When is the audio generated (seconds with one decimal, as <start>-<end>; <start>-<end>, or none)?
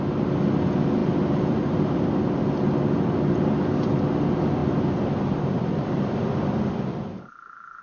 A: 1.0-4.0; 4.6-6.5